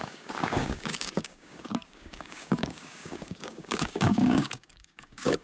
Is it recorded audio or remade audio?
remade